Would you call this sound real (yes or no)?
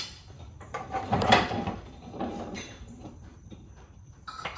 no